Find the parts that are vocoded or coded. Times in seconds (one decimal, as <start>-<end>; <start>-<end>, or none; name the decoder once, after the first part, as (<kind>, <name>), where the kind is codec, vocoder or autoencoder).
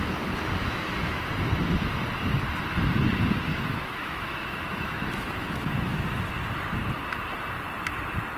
0.6-1.2 (autoencoder, DAC-VAE); 3.5-6.2